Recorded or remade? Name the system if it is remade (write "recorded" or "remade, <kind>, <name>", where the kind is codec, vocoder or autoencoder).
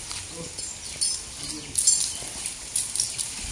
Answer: recorded